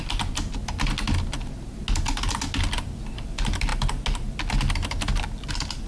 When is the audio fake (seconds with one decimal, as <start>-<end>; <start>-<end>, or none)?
none